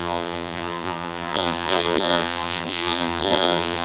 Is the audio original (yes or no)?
no